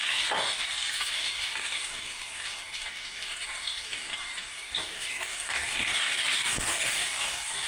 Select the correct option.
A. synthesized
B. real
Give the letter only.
A